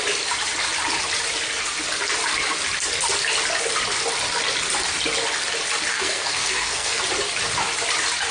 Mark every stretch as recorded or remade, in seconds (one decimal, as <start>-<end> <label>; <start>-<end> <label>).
0.0-5.9 recorded; 5.9-7.0 remade; 7.0-8.3 recorded